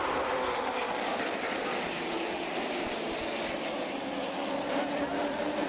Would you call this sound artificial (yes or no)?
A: yes